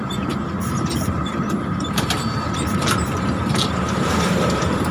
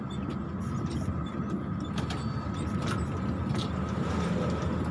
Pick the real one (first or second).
second